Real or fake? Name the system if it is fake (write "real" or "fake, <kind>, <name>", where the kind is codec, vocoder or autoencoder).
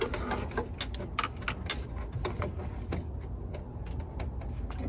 real